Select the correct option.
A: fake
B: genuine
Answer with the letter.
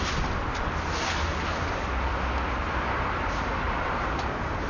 B